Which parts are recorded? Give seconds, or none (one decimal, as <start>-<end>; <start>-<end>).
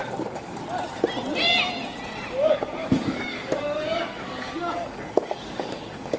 0.6-2.4